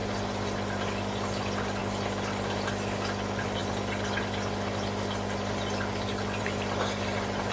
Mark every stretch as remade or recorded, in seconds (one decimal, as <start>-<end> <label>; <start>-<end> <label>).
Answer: 0.0-7.5 recorded